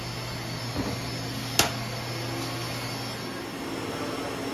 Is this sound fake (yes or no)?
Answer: no